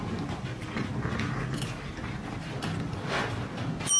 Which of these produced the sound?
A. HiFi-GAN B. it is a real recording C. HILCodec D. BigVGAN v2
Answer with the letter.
B